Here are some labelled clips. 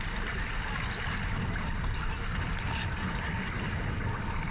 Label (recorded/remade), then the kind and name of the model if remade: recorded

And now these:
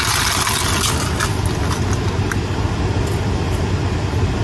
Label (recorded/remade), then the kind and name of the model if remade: recorded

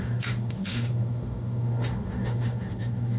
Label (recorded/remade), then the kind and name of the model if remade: remade, autoencoder, DAC-VAE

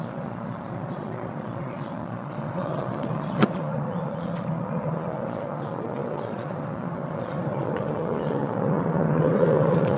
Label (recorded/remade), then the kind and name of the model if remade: remade, vocoder, Vocos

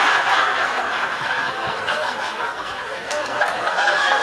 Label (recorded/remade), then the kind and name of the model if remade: remade, codec, SNAC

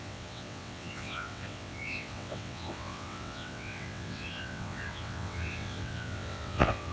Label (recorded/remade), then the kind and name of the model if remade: remade, vocoder, WaveNeXt